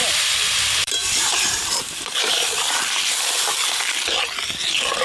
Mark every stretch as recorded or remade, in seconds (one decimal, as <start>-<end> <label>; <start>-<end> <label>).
0.0-3.0 remade; 3.0-5.0 recorded